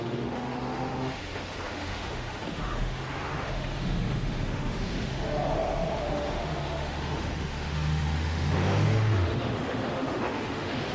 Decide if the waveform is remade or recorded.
remade